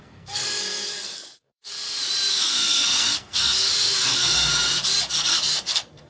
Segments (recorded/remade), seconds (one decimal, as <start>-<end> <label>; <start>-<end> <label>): 0.0-1.7 remade; 1.7-2.3 recorded; 2.3-4.5 remade; 4.5-5.1 recorded; 5.1-6.1 remade

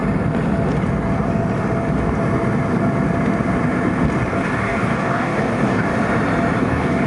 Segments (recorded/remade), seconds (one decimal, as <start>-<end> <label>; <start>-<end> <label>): 0.0-4.3 recorded; 4.3-5.9 remade; 5.9-6.6 recorded; 6.6-7.1 remade